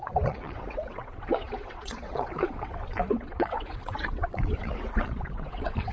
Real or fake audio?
fake